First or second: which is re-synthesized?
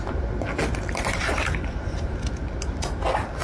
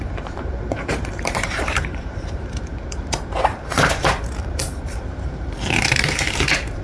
second